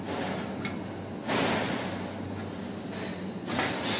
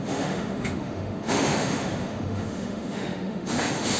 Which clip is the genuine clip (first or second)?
first